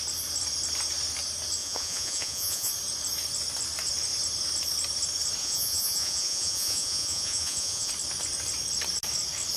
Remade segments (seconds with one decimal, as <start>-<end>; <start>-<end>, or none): 1.6-2.7; 5.4-7.9